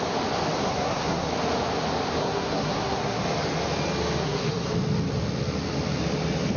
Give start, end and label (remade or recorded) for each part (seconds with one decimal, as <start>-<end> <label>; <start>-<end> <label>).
0.0-0.6 recorded; 0.6-1.3 remade; 1.3-2.2 recorded; 2.2-3.2 remade; 3.2-4.2 recorded; 4.2-4.7 remade; 4.7-6.6 recorded

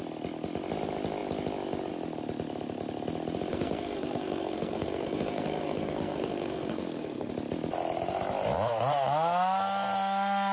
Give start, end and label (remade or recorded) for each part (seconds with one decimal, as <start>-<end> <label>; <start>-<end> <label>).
0.0-3.5 recorded; 3.5-7.3 remade; 7.3-10.5 recorded

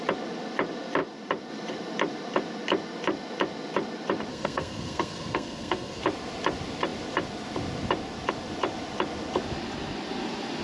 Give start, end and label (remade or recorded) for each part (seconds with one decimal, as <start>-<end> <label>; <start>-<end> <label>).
0.0-4.3 recorded; 4.3-6.0 remade; 6.0-10.6 recorded

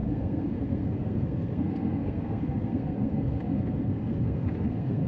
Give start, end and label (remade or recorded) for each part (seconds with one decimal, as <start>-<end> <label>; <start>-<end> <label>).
0.0-5.1 remade

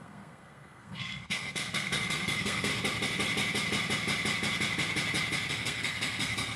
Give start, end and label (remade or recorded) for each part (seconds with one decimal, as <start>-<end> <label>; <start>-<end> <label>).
0.0-2.7 remade; 2.7-5.5 recorded; 5.5-6.6 remade

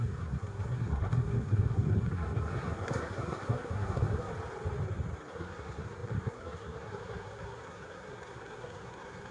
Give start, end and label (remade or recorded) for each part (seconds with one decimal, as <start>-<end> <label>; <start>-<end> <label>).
0.0-4.3 remade; 4.3-5.3 recorded; 5.3-9.3 remade

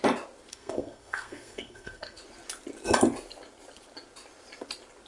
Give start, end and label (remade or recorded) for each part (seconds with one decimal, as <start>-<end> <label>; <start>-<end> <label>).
0.0-0.5 recorded; 0.5-2.2 remade; 2.2-5.1 recorded

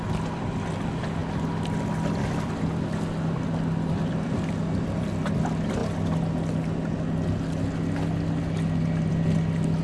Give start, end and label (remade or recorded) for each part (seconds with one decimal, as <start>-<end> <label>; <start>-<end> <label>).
0.0-9.8 recorded